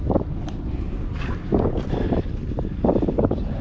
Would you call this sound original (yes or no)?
yes